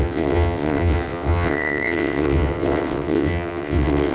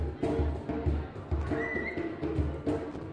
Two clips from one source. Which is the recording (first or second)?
second